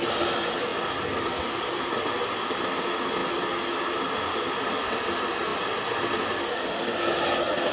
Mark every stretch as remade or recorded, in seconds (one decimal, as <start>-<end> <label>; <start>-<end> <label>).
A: 0.0-7.7 recorded